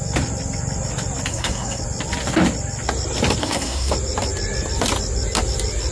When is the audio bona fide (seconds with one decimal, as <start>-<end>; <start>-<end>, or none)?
0.0-1.3; 1.8-3.4; 3.9-5.9